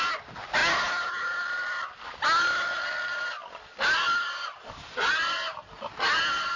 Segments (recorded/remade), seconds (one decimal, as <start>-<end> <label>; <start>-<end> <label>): 0.0-6.6 recorded

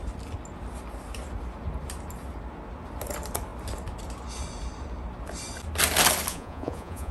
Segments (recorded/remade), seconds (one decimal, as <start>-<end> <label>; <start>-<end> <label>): 0.0-6.3 recorded; 6.3-7.1 remade

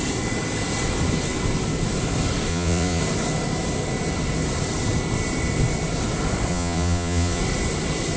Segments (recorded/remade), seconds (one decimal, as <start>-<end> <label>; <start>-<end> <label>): 0.0-2.5 recorded; 2.5-3.0 remade; 3.0-6.5 recorded; 6.5-7.4 remade; 7.4-8.2 recorded

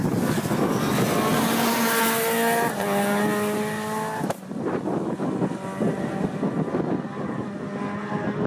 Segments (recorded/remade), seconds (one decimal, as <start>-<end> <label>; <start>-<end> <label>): 0.0-8.5 recorded

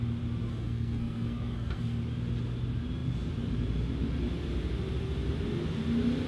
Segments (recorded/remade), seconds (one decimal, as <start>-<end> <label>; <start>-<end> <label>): 0.0-0.5 recorded; 0.5-2.0 remade; 2.0-6.3 recorded

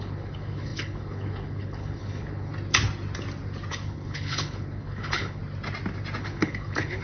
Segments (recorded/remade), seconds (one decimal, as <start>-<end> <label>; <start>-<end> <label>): 0.0-2.5 remade; 2.5-3.7 recorded; 3.7-5.4 remade; 5.4-6.2 recorded; 6.2-7.0 remade

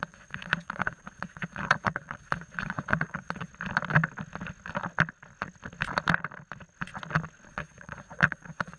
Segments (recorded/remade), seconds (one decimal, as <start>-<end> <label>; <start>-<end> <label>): 0.0-3.5 remade; 3.5-7.5 recorded; 7.5-8.8 remade

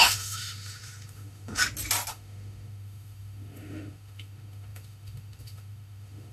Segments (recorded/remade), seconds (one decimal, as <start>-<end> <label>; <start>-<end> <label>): 0.0-1.6 remade; 1.6-2.1 recorded; 2.1-6.3 remade